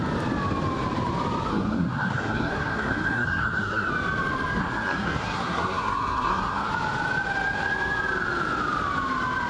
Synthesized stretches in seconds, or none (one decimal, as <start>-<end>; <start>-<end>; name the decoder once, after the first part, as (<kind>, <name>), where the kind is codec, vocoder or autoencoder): 1.5-3.9 (codec, SNAC); 4.6-6.7